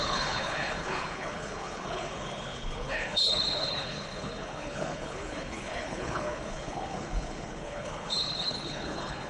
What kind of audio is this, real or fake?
fake